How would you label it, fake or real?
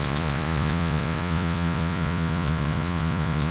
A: fake